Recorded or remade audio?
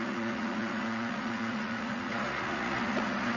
remade